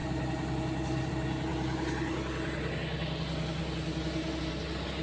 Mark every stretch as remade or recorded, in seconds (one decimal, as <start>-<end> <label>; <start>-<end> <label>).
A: 0.0-5.0 recorded